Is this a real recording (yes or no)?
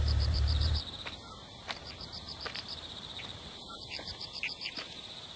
no